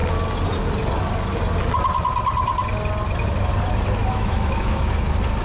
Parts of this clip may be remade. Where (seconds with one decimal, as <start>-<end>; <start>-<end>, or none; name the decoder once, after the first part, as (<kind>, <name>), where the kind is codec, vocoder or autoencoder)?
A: 4.0-4.9 (autoencoder, DAC-VAE)